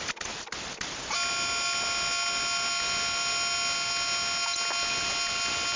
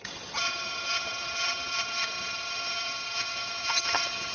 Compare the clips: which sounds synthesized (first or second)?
second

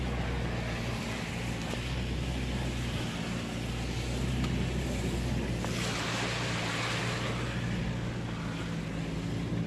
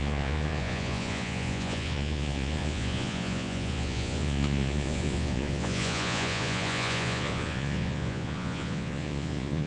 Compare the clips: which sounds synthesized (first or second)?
second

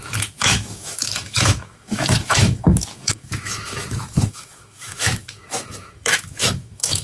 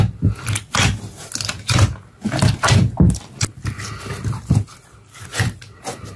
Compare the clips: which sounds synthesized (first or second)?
first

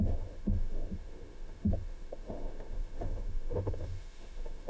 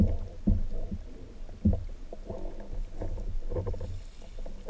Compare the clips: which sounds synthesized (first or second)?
first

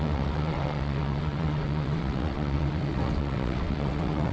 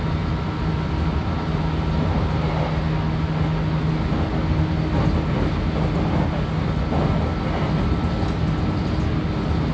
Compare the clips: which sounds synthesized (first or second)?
first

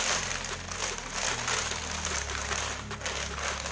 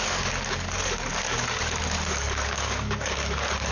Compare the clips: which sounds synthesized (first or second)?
second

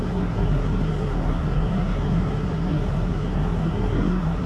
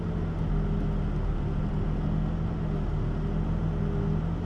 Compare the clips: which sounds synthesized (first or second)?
first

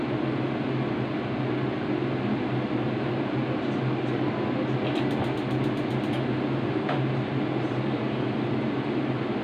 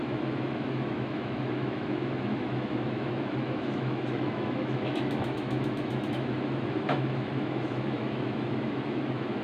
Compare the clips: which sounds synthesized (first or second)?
second